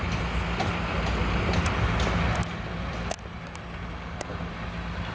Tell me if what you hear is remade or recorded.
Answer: recorded